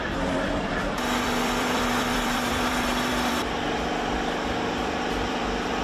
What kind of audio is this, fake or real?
fake